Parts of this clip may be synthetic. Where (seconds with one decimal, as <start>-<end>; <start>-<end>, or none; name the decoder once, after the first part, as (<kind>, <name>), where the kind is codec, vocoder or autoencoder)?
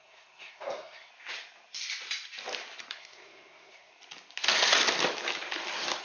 0.0-1.1 (codec, SNAC); 2.9-3.9